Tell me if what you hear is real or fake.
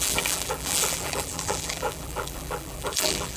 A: fake